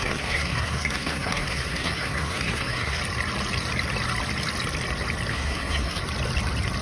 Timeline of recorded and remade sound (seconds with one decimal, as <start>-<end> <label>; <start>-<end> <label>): 0.0-3.0 remade; 3.0-5.3 recorded; 5.3-6.0 remade; 6.0-6.8 recorded